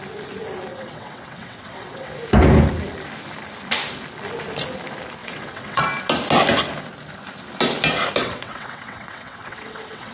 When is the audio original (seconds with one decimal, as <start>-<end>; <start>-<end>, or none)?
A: 0.0-0.7; 2.1-5.2; 5.8-8.2